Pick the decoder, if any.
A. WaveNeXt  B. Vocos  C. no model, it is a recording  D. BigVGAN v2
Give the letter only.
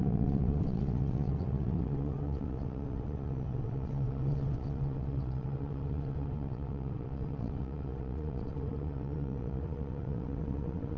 A